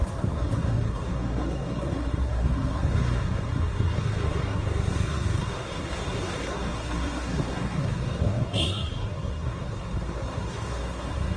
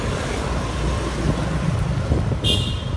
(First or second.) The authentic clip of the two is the second